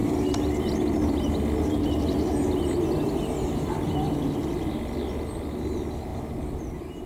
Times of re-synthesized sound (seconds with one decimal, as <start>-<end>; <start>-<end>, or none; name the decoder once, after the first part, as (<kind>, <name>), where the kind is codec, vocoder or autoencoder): 0.0-2.7 (vocoder, BigVGAN v2); 6.1-6.6